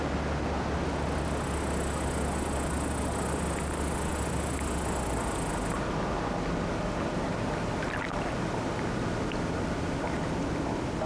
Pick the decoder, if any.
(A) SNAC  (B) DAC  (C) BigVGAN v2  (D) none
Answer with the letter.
D